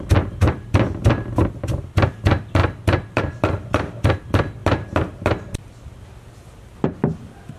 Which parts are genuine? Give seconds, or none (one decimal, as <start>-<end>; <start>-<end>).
0.0-7.6